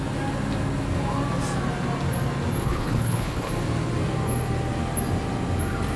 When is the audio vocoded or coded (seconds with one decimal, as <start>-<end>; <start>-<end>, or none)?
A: 2.6-3.5